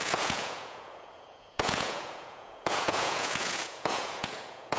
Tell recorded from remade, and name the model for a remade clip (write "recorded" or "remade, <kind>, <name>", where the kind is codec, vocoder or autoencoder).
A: remade, vocoder, Vocos